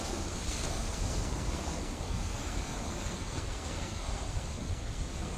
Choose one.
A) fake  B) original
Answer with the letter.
A